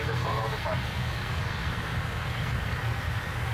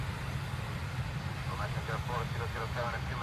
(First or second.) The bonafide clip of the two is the second